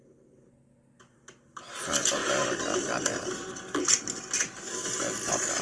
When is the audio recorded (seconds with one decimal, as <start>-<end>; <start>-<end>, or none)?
0.0-5.6